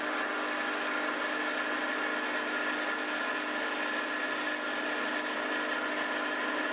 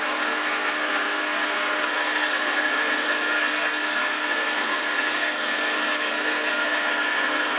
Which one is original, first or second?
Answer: first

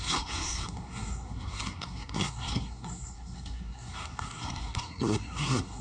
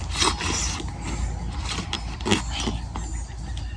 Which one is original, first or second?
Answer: second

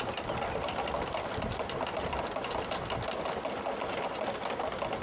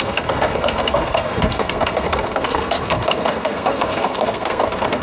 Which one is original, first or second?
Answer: first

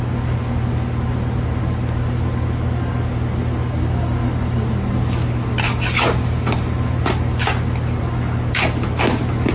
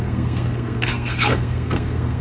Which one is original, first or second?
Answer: first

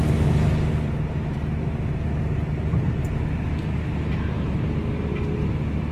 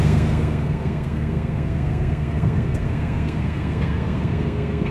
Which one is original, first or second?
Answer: first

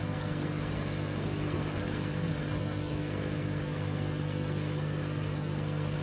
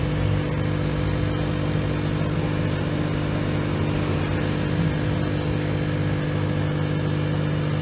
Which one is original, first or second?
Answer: second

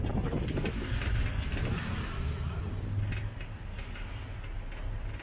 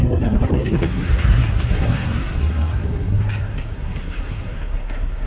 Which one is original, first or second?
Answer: first